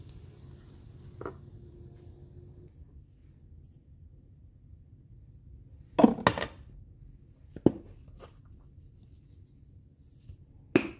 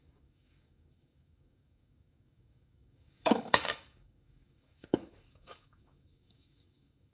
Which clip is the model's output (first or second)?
second